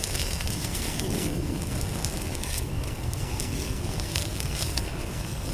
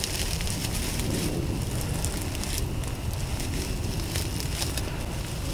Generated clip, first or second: first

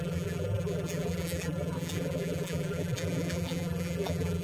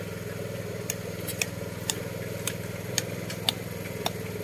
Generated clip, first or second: first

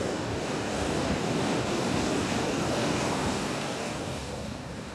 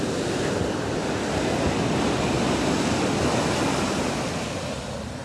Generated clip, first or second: first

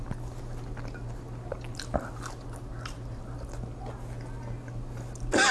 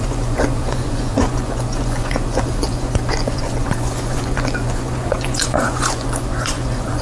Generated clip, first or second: second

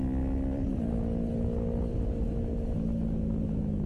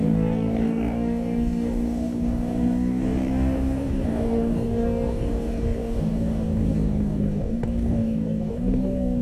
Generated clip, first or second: second